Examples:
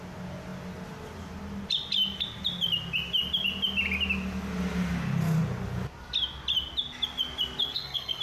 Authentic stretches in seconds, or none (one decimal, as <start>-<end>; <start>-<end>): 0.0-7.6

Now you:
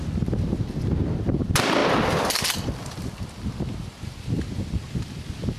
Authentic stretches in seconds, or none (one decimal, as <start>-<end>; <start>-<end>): 0.0-5.6

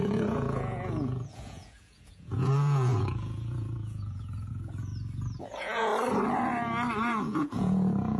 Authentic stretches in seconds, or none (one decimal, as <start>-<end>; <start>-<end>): 4.9-5.4; 5.9-7.0